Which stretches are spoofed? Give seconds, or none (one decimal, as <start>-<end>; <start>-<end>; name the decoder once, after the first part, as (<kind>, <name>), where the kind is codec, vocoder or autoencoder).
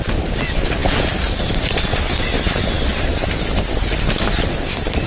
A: 0.0-1.9 (vocoder, BigVGAN v2)